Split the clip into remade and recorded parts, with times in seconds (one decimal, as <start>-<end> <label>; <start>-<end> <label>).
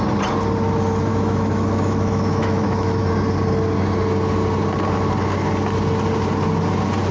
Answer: 0.0-1.1 recorded; 1.1-3.1 remade; 3.1-7.1 recorded